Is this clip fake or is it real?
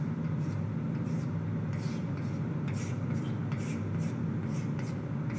real